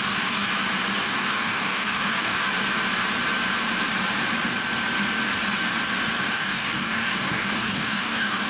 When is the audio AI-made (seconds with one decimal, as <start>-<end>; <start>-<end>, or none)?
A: 0.0-0.5; 1.0-2.5; 6.2-8.5